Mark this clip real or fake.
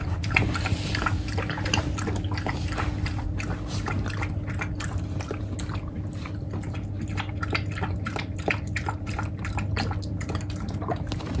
real